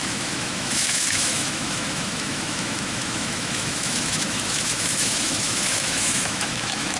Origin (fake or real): fake